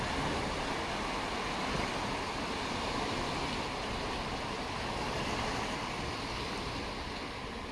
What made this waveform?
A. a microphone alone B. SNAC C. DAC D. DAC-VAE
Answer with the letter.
A